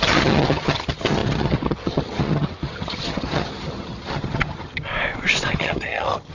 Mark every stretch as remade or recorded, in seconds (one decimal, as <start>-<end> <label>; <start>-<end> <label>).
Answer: 0.0-4.9 remade; 4.9-5.5 recorded; 5.5-6.3 remade